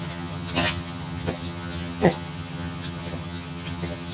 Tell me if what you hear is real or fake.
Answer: fake